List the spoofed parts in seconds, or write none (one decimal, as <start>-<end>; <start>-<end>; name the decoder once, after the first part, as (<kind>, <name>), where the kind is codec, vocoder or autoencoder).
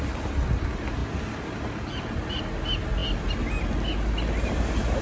none